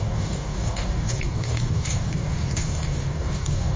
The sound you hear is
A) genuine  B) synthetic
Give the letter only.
B